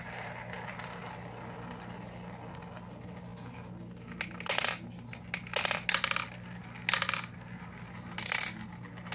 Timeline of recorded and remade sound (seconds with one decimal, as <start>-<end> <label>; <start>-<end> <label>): 0.0-9.1 recorded